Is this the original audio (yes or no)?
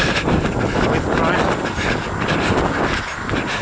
yes